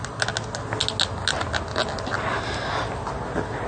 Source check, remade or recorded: recorded